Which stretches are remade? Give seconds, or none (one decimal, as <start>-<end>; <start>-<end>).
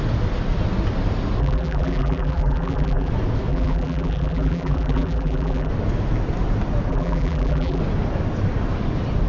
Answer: 1.4-3.1; 3.5-5.7; 6.9-7.8